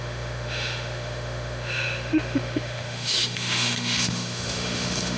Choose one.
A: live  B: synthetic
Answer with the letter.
B